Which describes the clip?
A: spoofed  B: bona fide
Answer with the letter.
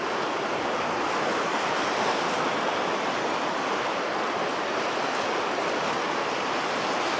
B